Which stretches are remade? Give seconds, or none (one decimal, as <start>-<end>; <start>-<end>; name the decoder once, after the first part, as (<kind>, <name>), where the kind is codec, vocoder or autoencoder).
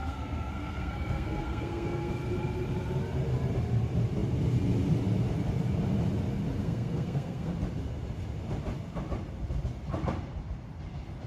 0.0-2.1 (codec, SNAC); 6.6-7.5